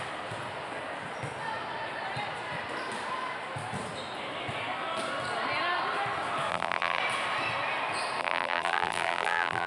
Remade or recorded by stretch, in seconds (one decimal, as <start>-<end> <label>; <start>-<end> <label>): 0.0-6.5 recorded; 6.5-7.0 remade; 7.0-8.2 recorded; 8.2-9.7 remade